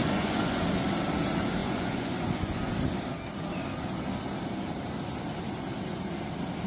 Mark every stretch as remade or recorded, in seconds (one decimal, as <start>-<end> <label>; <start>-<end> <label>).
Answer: 0.0-0.6 remade; 0.6-1.6 recorded; 1.6-2.7 remade; 2.7-6.7 recorded